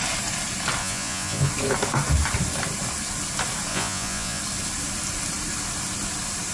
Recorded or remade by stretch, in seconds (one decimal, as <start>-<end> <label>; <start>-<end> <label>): 0.0-0.8 recorded; 0.8-1.5 remade; 1.5-3.7 recorded; 3.7-4.4 remade; 4.4-6.5 recorded